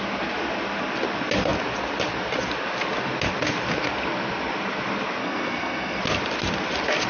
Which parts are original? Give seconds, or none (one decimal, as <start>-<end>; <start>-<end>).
0.0-5.2; 6.0-7.1